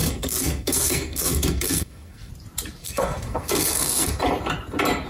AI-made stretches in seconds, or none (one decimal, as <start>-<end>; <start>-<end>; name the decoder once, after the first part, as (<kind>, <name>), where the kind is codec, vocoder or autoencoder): 0.0-2.3 (codec, SNAC); 2.8-4.2